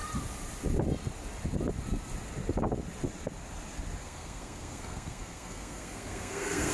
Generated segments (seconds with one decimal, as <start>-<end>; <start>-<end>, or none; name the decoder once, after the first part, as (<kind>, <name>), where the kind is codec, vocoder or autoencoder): 4.0-6.7 (codec, SNAC)